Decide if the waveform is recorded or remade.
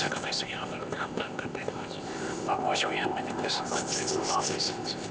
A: remade